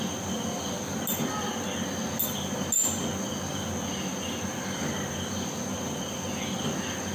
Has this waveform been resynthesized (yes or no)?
no